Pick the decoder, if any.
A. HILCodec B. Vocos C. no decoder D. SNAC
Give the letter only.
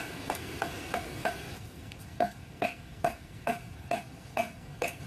D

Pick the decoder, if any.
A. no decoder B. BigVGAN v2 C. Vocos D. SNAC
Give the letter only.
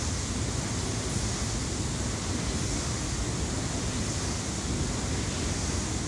A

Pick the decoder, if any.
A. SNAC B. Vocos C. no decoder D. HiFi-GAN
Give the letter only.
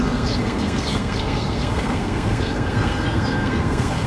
A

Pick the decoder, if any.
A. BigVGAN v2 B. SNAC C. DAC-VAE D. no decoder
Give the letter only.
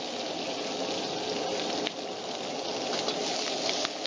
D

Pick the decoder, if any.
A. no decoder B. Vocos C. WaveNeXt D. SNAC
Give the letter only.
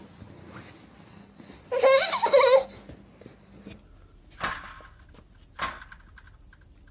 A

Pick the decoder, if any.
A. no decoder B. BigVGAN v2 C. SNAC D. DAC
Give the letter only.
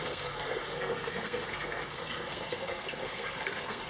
C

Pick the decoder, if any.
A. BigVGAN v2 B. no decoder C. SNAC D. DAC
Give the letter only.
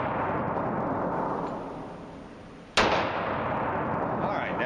B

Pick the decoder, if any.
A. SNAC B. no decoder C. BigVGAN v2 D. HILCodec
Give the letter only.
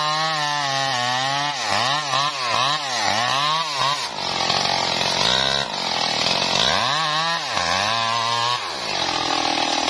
B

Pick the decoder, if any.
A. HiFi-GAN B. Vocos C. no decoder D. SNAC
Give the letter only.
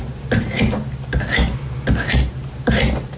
C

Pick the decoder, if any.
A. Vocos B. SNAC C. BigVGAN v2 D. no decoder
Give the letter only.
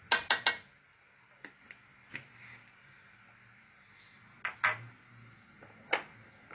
D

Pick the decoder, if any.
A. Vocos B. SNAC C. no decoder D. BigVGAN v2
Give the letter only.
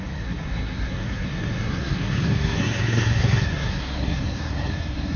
B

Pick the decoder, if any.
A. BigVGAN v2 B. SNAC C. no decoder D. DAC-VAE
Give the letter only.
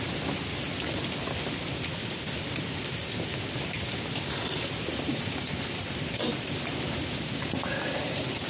C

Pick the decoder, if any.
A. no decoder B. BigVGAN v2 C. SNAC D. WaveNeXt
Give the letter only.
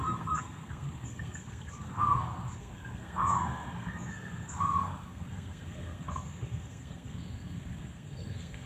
C